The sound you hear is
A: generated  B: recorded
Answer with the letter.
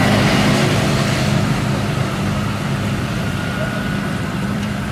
A